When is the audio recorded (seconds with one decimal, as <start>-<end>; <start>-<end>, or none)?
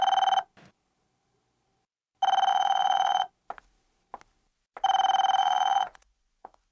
0.0-2.5; 3.3-5.4